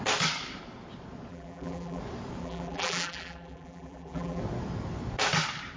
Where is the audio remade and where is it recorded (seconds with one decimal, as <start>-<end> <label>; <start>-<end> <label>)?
0.0-1.3 recorded; 1.3-2.0 remade; 2.0-2.4 recorded; 2.4-4.4 remade; 4.4-5.8 recorded